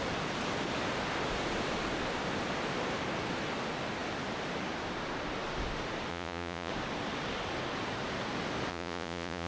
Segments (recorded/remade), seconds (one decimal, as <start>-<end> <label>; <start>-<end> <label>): 0.0-6.1 recorded; 6.1-6.7 remade; 6.7-8.7 recorded; 8.7-9.5 remade